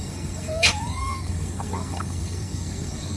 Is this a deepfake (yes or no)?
yes